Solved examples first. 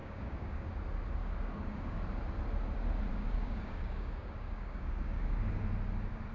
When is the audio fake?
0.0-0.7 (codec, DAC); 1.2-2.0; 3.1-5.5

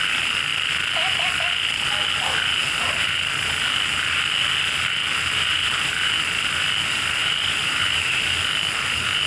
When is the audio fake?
5.1-6.1 (vocoder, BigVGAN v2); 7.2-8.2